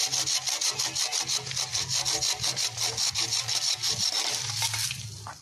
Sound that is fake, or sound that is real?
real